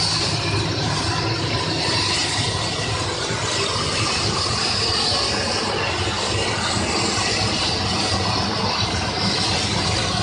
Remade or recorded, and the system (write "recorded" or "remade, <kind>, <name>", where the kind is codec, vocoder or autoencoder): recorded